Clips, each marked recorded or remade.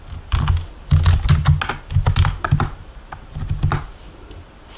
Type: recorded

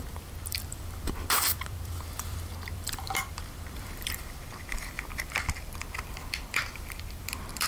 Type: remade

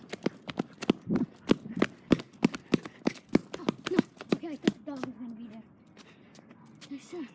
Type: recorded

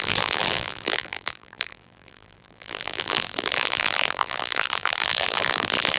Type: remade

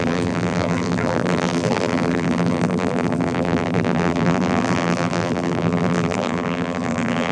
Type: remade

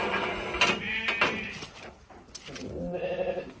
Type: recorded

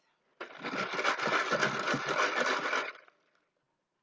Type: recorded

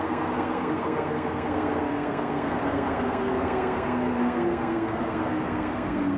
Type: remade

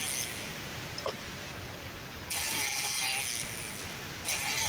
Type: recorded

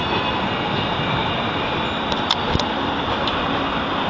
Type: recorded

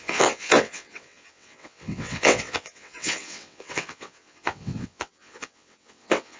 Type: remade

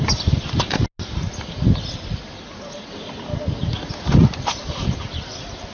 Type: recorded